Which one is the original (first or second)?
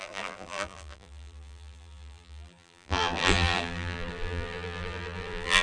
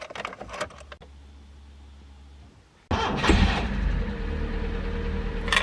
second